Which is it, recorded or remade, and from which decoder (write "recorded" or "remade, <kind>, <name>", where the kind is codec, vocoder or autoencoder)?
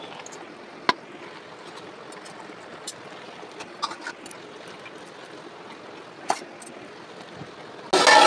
recorded